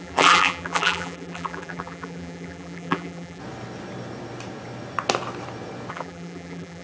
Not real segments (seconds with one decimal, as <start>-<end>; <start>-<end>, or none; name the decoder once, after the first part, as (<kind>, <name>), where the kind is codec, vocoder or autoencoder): 0.0-3.4 (vocoder, BigVGAN v2); 5.9-6.8